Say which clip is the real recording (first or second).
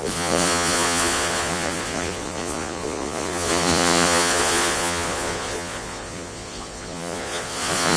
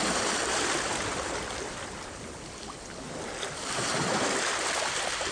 second